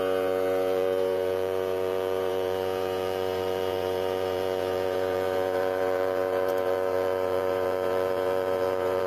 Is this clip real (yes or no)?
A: no